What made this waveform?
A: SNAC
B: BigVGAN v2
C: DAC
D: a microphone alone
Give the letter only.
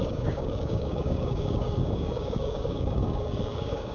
C